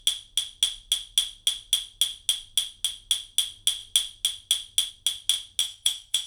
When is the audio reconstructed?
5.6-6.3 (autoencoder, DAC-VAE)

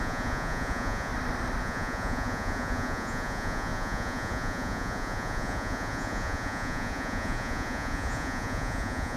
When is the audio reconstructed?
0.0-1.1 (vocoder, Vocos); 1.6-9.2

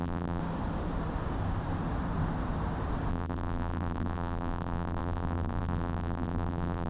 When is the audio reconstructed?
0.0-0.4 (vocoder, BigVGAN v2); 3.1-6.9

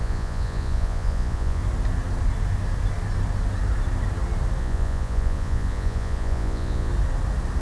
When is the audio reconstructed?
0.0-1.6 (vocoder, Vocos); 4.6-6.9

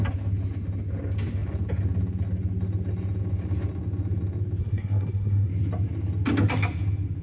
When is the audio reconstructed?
4.6-5.5 (codec, SNAC)